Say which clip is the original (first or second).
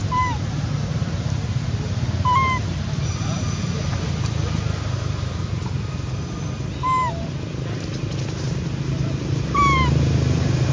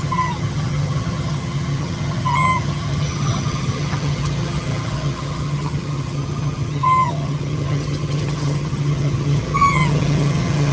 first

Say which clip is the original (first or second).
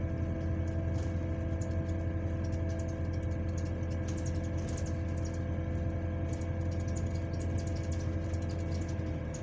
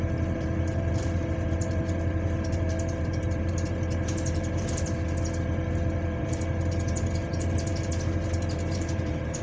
first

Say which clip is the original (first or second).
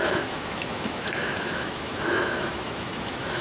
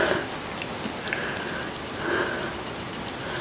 second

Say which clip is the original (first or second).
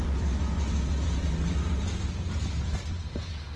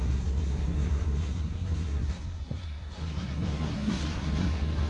first